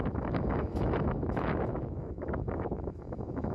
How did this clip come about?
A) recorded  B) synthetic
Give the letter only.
B